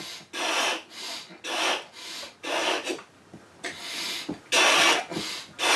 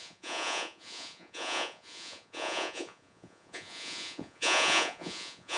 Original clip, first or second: first